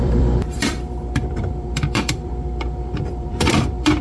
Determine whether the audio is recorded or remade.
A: remade